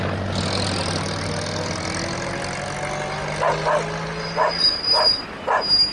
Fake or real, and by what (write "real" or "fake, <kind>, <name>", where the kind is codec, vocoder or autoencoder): real